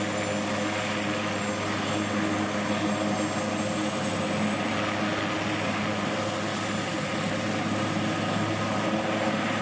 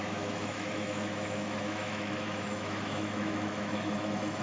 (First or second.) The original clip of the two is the first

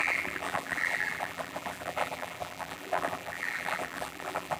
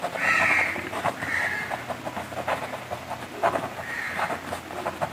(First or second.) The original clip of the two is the second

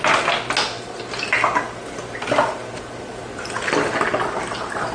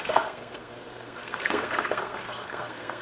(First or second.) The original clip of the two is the first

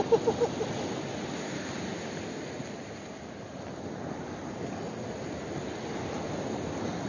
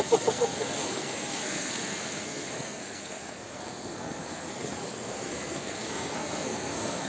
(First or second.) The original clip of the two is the first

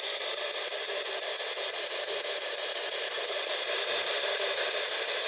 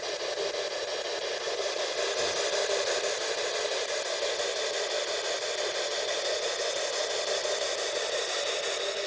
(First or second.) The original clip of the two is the second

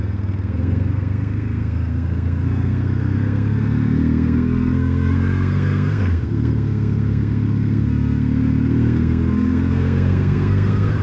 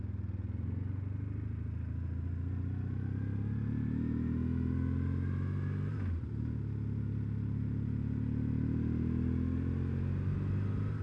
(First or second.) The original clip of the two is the second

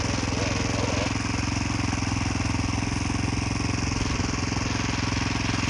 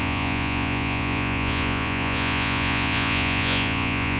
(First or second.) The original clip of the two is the first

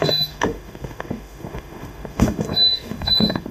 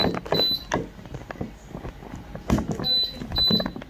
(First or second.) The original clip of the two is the second